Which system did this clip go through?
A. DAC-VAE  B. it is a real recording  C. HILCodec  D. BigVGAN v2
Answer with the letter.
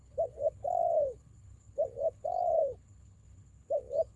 C